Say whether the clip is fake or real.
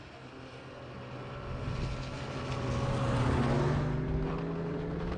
real